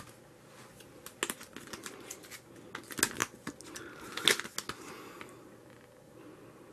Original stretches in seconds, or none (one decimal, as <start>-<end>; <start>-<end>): 0.0-6.7